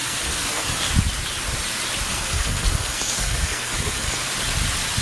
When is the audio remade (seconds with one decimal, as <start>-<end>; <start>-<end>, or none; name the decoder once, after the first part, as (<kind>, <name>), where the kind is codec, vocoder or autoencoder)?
0.0-0.9 (codec, SNAC); 2.1-4.3